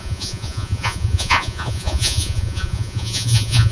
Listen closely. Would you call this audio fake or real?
fake